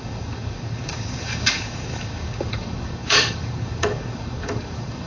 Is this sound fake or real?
fake